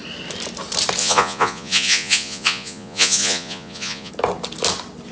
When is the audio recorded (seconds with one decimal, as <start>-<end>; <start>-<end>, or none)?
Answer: 0.0-1.0; 4.1-5.1